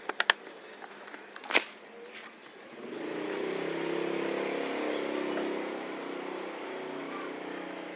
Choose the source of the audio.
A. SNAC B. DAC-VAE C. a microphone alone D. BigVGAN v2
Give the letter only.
C